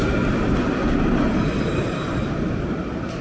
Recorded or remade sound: recorded